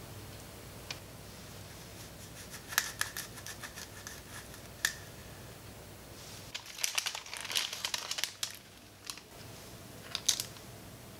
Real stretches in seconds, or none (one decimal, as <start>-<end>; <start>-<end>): 0.0-11.2